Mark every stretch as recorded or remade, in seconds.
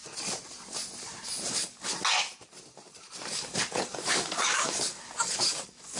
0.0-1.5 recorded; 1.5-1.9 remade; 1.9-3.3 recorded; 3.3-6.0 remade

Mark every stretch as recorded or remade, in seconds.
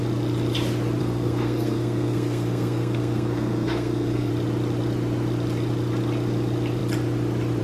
0.0-1.0 recorded; 1.0-4.3 remade; 4.3-7.6 recorded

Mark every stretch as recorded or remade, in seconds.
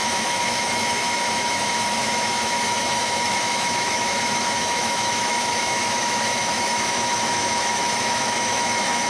0.0-9.1 remade